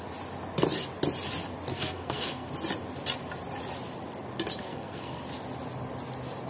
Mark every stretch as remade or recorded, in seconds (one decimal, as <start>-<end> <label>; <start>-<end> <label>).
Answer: 0.0-1.7 recorded; 1.7-2.5 remade; 2.5-4.6 recorded; 4.6-5.2 remade; 5.2-6.5 recorded